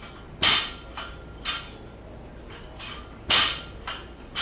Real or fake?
real